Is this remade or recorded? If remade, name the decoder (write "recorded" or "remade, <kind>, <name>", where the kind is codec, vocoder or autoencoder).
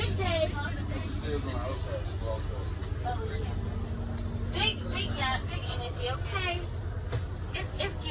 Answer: recorded